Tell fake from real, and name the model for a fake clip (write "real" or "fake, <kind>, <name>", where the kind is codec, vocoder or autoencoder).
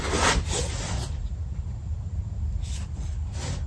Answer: real